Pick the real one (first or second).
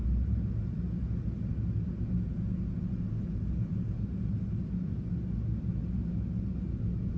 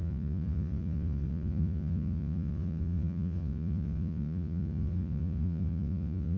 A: first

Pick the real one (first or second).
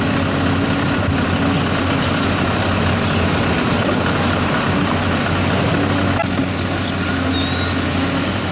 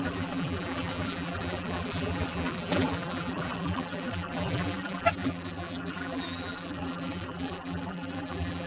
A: first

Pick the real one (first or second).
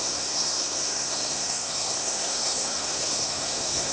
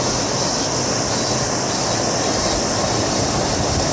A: second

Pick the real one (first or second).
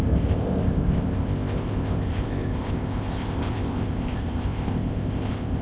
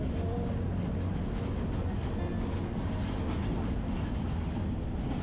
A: second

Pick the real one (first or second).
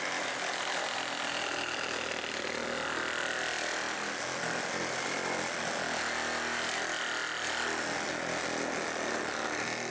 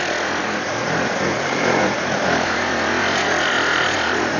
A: first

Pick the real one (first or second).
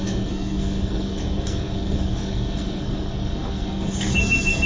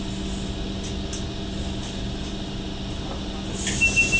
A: second